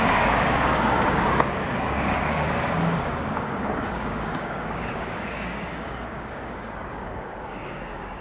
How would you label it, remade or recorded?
remade